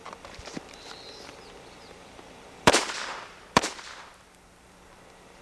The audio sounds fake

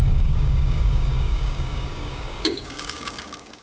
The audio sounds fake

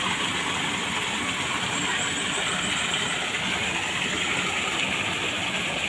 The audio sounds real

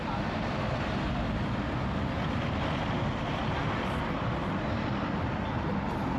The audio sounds fake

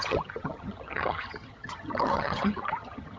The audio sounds fake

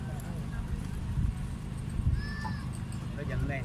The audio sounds real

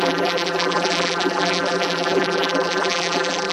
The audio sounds fake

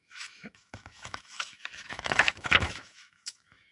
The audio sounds fake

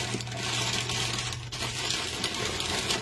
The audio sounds real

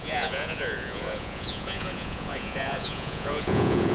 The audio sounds fake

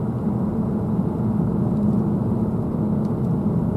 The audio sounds real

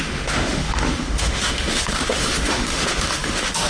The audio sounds fake